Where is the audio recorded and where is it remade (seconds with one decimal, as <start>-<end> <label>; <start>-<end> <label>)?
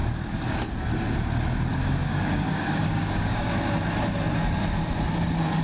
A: 0.0-0.7 remade; 0.7-1.7 recorded; 1.7-3.5 remade; 3.5-5.6 recorded